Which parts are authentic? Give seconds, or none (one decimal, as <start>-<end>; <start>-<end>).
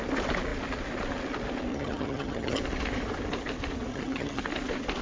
0.0-1.7; 2.6-3.9; 4.4-5.0